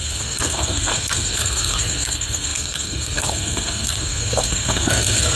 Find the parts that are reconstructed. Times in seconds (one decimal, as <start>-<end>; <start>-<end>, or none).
0.0-5.4